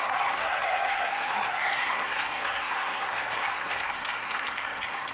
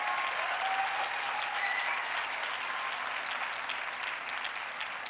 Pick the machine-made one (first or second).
first